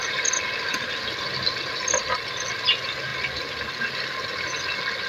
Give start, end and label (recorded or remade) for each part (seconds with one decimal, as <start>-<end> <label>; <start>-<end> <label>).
0.0-5.1 recorded